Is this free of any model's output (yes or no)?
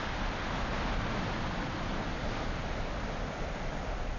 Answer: yes